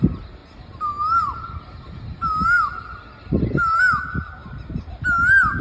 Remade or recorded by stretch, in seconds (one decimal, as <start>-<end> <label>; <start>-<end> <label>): 0.0-5.6 recorded